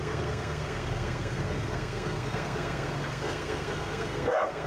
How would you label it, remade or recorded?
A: remade